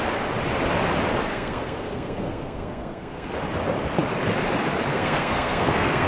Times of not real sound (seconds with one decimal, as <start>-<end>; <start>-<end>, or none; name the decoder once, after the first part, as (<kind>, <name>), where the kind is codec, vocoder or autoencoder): 1.3-3.3 (codec, SNAC); 4.9-6.1